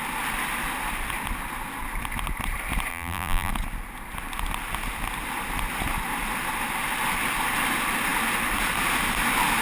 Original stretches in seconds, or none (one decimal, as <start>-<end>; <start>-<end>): 0.0-2.9; 3.5-9.6